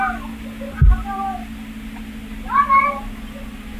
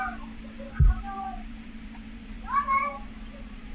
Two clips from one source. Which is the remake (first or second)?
second